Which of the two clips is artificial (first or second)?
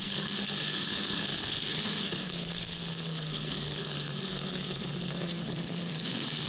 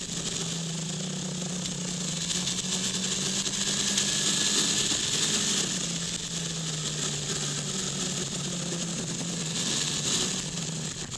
first